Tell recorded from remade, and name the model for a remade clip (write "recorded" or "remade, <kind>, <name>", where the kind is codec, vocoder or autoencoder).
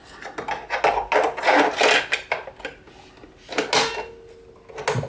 recorded